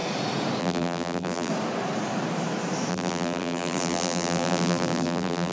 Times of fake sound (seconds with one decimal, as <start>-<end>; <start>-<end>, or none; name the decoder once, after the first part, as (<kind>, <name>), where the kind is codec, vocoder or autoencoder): 0.6-1.5 (vocoder, BigVGAN v2); 2.9-5.5